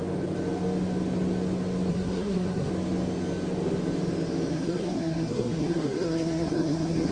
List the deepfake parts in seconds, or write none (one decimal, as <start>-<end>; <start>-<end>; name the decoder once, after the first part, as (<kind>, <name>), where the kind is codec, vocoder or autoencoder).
1.9-2.7 (codec, SNAC); 4.5-7.1